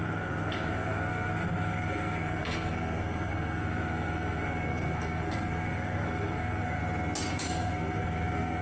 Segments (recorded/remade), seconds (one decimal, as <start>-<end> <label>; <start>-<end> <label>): 0.0-6.8 remade; 6.8-7.3 recorded; 7.3-8.6 remade